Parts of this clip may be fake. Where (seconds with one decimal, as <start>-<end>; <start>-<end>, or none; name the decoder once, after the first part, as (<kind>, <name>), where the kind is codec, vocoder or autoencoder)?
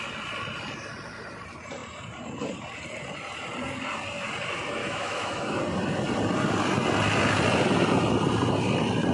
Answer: 4.8-5.6 (autoencoder, DAC-VAE)